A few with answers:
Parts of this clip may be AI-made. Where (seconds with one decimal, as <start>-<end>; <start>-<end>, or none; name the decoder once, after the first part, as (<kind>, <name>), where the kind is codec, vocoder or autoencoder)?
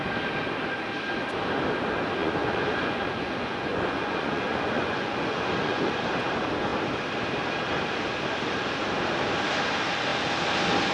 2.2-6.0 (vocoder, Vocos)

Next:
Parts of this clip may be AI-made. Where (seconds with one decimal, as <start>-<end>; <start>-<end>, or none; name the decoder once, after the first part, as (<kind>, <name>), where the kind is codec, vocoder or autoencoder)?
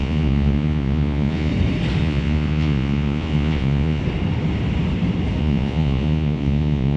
0.0-1.5 (vocoder, Vocos); 2.0-4.0; 5.4-7.0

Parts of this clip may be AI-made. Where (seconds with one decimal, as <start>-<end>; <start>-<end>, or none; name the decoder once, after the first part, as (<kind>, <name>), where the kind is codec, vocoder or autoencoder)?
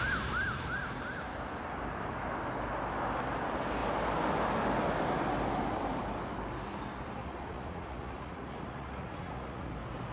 7.2-9.7 (vocoder, Vocos)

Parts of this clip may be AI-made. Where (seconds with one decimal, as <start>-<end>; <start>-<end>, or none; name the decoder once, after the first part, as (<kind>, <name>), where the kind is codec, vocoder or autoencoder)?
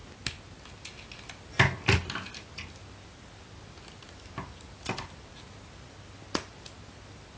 none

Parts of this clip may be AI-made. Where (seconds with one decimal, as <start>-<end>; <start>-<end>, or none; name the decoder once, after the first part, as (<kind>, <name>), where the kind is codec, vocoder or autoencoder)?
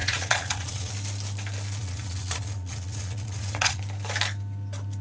0.0-0.9 (vocoder, Vocos); 1.8-3.8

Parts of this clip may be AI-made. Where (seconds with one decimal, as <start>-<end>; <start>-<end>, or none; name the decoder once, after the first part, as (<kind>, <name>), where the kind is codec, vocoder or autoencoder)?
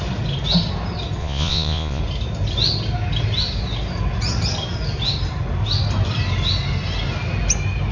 1.2-2.0 (vocoder, Vocos)